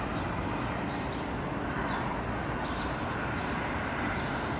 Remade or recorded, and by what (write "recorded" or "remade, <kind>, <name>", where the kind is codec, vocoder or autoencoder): recorded